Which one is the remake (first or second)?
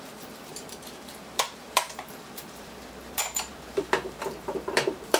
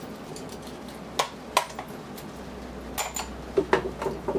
first